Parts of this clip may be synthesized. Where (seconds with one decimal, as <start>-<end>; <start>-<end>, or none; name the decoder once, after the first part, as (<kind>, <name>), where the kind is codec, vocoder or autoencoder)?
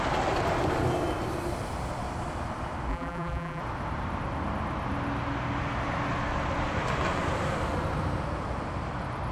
2.9-3.6 (vocoder, BigVGAN v2)